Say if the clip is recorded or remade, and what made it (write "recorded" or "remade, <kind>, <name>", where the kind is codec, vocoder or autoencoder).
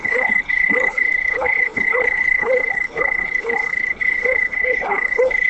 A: remade, codec, HILCodec